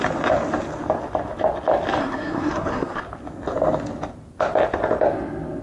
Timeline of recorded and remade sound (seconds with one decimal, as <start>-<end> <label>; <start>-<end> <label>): 0.0-2.0 recorded; 2.0-3.0 remade; 3.0-5.6 recorded